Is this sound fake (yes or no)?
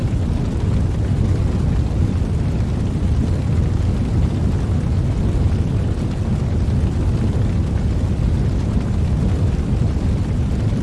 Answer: no